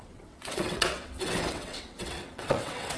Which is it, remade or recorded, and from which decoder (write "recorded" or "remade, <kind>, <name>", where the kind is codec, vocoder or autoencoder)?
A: remade, vocoder, WaveNeXt